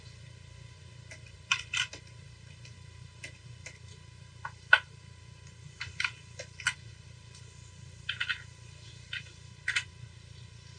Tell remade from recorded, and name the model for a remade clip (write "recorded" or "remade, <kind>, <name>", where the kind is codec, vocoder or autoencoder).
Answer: recorded